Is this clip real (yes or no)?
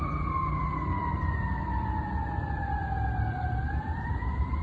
no